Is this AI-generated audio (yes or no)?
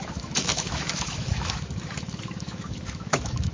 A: yes